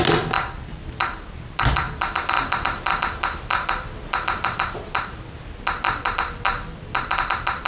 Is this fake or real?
real